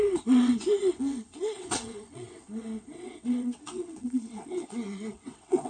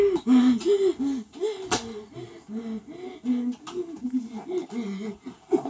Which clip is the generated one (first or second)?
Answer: first